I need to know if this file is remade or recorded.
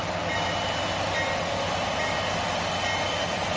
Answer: recorded